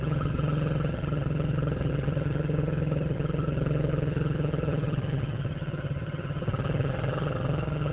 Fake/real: fake